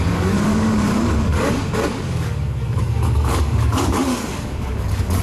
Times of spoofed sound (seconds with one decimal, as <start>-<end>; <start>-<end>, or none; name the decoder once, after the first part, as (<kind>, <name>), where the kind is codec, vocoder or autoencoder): 0.0-5.2 (codec, DAC)